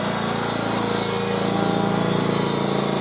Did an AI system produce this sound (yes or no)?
no